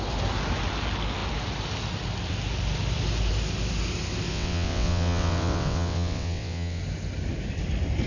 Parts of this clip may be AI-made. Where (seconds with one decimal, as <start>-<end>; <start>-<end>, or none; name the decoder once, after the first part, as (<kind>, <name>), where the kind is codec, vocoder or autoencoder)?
4.3-6.8 (vocoder, WaveNeXt)